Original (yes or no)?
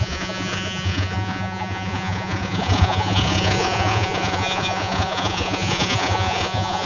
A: no